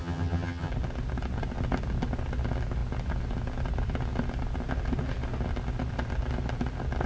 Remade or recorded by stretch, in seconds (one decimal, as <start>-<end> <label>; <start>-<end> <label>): 0.0-0.7 remade; 0.7-7.1 recorded